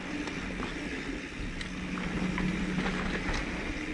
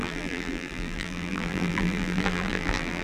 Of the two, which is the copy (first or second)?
second